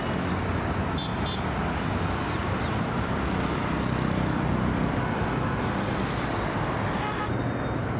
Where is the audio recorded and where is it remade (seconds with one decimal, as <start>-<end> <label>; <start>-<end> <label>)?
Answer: 0.0-1.1 recorded; 1.1-5.6 remade; 5.6-8.0 recorded